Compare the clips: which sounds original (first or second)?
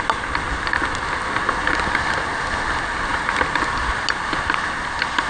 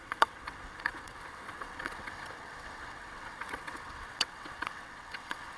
first